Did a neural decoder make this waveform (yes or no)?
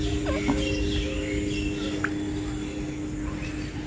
no